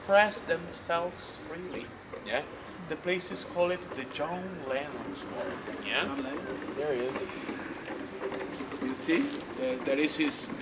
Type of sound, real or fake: real